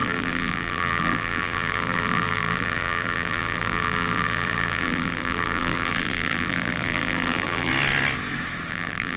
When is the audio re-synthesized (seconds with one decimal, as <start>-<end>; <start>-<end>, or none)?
0.0-7.7; 8.7-9.2